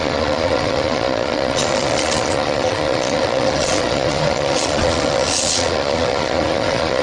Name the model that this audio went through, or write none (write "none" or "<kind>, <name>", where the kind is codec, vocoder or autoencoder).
vocoder, Vocos